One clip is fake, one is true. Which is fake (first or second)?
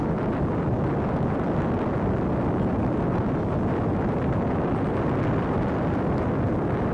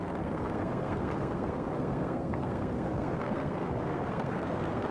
second